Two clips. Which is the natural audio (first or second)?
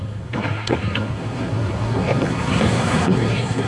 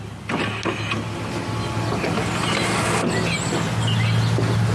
second